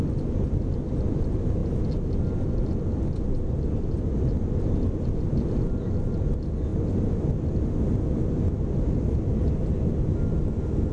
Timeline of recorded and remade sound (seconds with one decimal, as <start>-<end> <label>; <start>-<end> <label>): 0.0-10.9 recorded